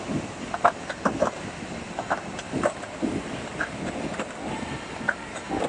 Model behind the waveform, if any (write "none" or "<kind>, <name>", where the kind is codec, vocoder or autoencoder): none